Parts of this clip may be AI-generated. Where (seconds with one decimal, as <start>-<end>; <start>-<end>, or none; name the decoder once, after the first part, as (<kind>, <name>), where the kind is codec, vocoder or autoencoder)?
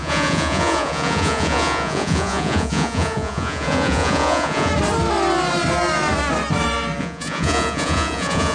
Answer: 0.0-4.7 (vocoder, Vocos); 7.0-8.5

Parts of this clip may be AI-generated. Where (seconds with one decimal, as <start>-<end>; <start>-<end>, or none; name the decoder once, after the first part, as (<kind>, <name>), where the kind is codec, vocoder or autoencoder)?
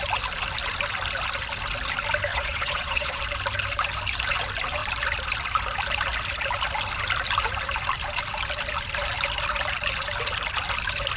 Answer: 2.3-3.2 (vocoder, Vocos)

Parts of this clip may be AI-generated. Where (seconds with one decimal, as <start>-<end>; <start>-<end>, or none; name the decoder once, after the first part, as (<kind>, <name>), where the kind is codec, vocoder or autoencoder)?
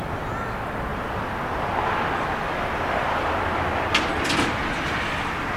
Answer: 0.9-1.5 (vocoder, BigVGAN v2); 3.0-4.1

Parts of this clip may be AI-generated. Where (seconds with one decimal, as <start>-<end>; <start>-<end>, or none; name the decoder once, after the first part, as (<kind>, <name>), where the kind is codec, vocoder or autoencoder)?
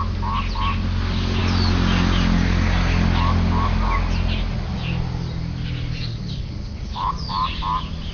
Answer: 6.1-7.1 (codec, HILCodec)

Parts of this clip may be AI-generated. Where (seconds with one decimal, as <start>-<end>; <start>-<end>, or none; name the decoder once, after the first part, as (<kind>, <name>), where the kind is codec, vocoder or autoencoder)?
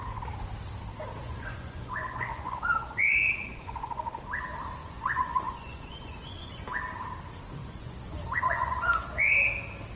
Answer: 1.2-4.2 (vocoder, Vocos); 4.8-6.6; 7.6-9.3